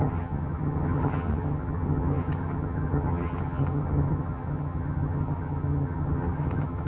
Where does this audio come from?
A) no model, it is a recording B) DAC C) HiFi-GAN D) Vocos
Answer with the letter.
C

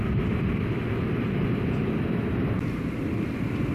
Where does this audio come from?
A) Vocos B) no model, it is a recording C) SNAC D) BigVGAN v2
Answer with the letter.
B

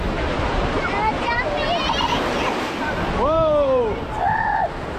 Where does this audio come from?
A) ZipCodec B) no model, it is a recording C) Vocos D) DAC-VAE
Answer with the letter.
B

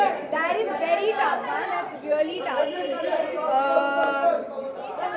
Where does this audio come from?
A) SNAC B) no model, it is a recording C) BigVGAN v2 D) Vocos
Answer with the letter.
C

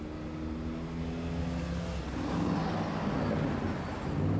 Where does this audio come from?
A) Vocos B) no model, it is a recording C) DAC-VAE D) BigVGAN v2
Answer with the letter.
B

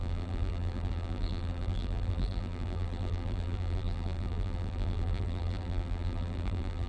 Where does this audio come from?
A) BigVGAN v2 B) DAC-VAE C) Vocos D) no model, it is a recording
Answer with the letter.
A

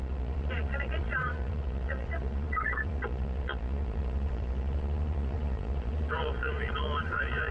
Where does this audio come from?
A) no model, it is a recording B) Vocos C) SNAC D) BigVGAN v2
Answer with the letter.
B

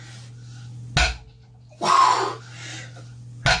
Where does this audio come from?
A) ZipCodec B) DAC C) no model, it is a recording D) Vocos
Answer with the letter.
C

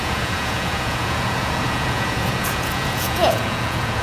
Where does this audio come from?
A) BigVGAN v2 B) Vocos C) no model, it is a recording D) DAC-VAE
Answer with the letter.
B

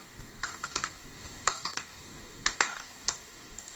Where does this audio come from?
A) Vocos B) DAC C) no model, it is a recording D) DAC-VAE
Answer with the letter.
B